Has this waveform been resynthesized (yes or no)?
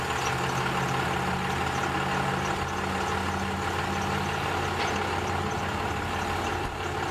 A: no